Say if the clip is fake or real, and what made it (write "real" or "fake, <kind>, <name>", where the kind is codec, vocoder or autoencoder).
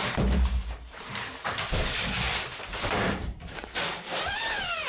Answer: fake, vocoder, BigVGAN v2